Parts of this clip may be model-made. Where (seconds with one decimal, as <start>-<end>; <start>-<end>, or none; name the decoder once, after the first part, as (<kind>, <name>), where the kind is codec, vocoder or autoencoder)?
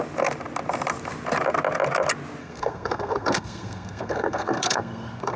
2.4-5.4 (codec, SNAC)